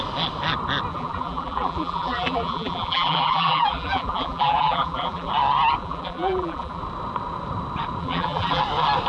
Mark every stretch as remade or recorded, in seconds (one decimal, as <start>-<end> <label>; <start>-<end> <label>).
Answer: 0.0-0.9 recorded; 0.9-5.3 remade; 5.3-5.8 recorded; 5.8-6.8 remade; 6.8-8.0 recorded; 8.0-8.6 remade; 8.6-9.1 recorded